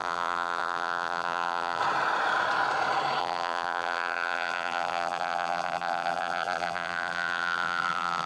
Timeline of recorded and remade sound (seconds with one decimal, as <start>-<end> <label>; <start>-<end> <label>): 0.0-1.8 remade; 1.8-3.2 recorded; 3.2-8.3 remade

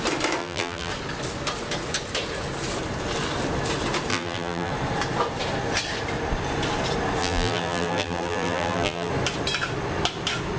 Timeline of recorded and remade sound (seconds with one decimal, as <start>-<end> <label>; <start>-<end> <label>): 0.0-0.4 recorded; 0.4-0.9 remade; 0.9-4.1 recorded; 4.1-4.7 remade; 4.7-7.2 recorded; 7.2-9.1 remade; 9.1-10.6 recorded

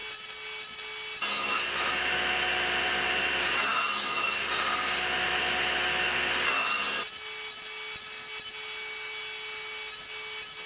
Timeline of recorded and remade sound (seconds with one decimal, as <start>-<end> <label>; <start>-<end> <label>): 0.0-10.7 recorded

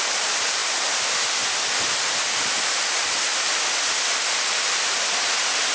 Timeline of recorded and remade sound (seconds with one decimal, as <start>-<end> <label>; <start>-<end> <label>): 0.0-3.3 recorded; 3.3-5.7 remade

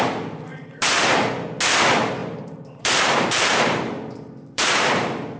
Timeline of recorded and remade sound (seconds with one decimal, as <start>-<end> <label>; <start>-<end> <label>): 0.0-0.5 recorded; 0.5-1.3 remade; 1.3-2.2 recorded; 2.2-5.4 remade